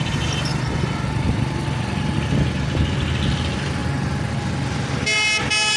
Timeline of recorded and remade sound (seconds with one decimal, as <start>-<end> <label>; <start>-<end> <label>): 0.0-5.8 recorded